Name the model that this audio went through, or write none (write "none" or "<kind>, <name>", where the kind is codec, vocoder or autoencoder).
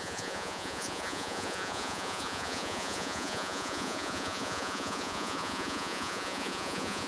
vocoder, Vocos